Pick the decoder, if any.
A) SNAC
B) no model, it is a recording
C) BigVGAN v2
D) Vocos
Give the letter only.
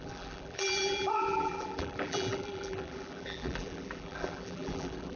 C